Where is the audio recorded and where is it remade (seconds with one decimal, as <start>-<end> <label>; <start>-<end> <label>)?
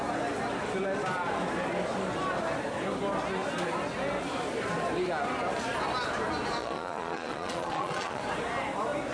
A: 0.0-6.6 recorded; 6.6-8.2 remade; 8.2-9.1 recorded